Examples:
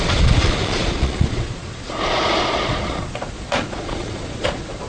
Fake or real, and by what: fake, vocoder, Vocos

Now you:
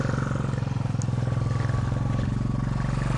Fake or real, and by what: real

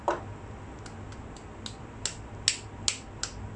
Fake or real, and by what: real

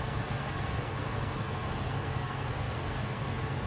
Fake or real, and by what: fake, codec, SNAC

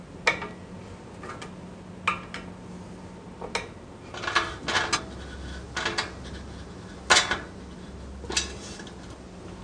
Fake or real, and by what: real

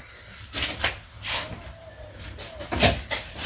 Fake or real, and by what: real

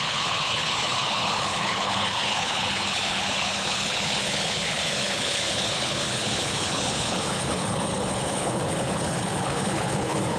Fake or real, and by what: fake, codec, HILCodec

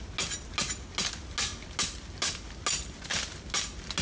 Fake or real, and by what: real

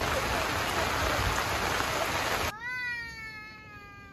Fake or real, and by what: real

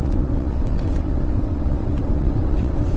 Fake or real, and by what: fake, vocoder, WaveNeXt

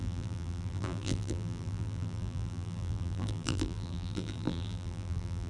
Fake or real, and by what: fake, vocoder, BigVGAN v2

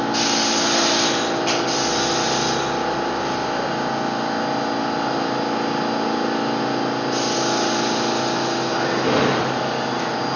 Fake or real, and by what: real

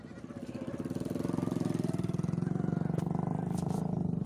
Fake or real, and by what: real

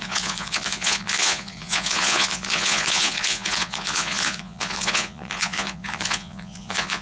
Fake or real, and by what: fake, vocoder, Vocos